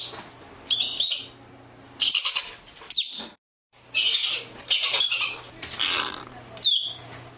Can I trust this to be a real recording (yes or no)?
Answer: yes